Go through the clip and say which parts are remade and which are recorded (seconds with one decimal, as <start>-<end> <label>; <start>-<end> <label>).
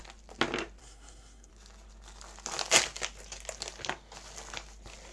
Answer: 0.0-0.8 recorded; 0.8-1.5 remade; 1.5-5.1 recorded